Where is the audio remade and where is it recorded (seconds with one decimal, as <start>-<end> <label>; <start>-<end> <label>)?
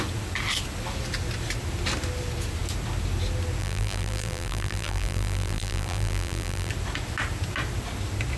0.0-3.6 recorded; 3.6-6.7 remade; 6.7-8.4 recorded